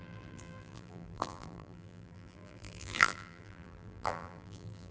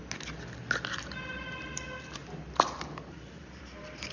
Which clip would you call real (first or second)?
second